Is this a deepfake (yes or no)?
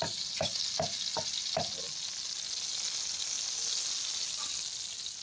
no